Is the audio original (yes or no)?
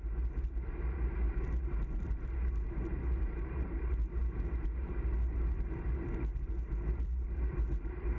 no